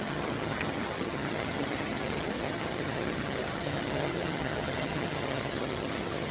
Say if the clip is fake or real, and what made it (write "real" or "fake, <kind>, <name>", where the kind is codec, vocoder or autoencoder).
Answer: fake, vocoder, HiFi-GAN